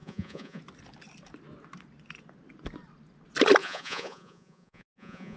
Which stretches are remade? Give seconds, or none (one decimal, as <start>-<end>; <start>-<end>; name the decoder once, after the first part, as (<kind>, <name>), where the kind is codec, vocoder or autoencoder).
0.0-0.6 (vocoder, Vocos); 3.6-5.4